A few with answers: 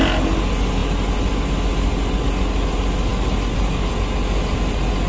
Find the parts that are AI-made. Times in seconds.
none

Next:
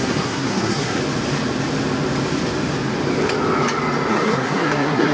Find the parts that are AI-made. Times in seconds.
0.0-1.0 (codec, SNAC); 4.1-5.1

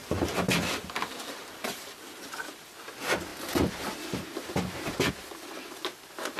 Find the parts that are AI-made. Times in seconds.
0.0-2.0 (vocoder, BigVGAN v2)

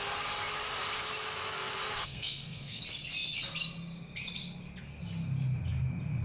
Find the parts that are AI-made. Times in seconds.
2.0-2.8 (codec, SNAC)

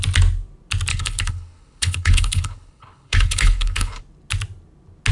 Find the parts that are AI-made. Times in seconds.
0.9-4.0 (codec, HILCodec)